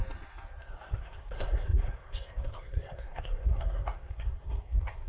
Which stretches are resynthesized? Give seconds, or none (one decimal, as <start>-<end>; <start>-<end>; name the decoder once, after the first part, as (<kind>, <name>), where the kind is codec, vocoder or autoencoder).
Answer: 0.6-5.1 (codec, SNAC)